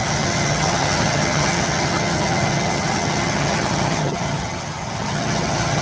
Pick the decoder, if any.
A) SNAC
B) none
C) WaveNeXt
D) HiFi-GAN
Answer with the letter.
D